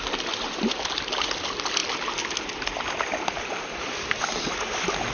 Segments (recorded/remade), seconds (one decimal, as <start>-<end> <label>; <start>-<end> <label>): 0.0-5.1 recorded